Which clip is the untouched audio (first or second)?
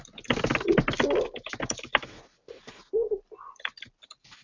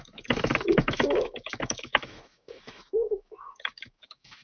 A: first